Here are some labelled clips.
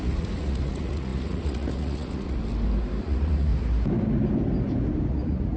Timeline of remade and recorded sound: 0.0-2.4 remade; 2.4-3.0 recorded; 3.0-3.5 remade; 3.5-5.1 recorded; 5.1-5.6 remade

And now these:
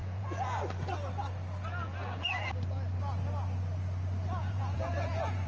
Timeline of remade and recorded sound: 0.0-0.6 remade; 0.6-1.8 recorded; 1.8-2.5 remade; 2.5-4.4 recorded; 4.4-5.5 remade

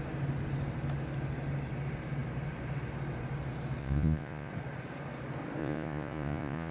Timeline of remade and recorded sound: 0.0-3.8 recorded; 3.8-4.5 remade; 4.5-5.6 recorded; 5.6-6.7 remade

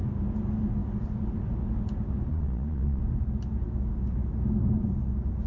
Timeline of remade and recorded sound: 0.0-2.3 recorded; 2.3-3.0 remade; 3.0-5.5 recorded